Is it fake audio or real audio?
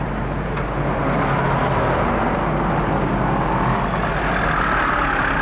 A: real